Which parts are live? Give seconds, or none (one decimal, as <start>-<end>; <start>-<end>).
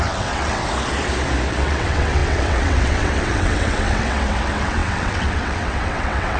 0.6-1.5